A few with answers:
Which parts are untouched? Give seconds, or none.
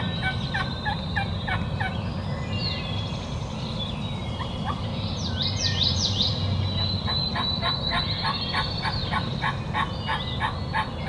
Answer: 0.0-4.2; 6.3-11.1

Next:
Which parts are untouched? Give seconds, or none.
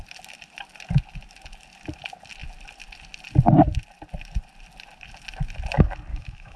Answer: 0.0-6.1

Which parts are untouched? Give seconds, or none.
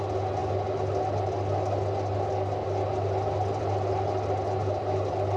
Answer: 0.0-5.4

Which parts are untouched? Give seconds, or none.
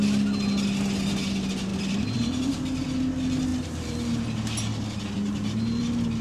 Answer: 0.0-1.7; 2.6-3.5; 4.1-6.2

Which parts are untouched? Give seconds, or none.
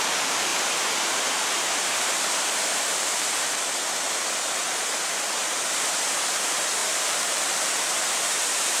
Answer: 0.0-0.5; 4.3-6.8; 8.4-8.8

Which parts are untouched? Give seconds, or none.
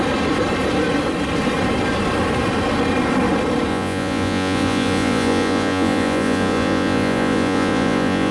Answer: 0.0-3.7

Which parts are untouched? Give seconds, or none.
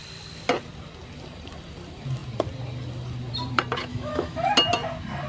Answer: 0.0-3.9; 4.5-5.3